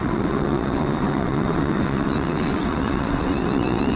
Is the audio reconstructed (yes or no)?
yes